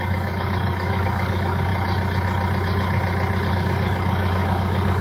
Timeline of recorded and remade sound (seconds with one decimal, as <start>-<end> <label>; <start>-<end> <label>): 0.0-1.7 remade; 1.7-3.5 recorded; 3.5-5.0 remade